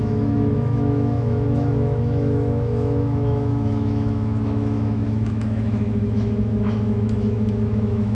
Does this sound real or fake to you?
fake